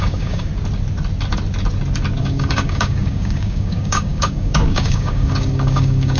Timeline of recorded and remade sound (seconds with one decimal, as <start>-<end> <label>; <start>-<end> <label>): 0.0-0.5 remade; 0.5-2.2 recorded; 2.2-6.2 remade